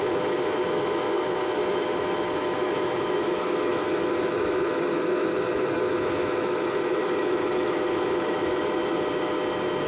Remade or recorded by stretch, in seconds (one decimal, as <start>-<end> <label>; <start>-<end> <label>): 0.0-8.8 remade; 8.8-9.9 recorded